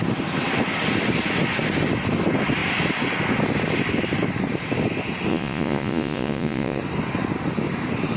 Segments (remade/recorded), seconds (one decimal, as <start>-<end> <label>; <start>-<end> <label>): 0.0-5.3 recorded; 5.3-6.8 remade; 6.8-8.2 recorded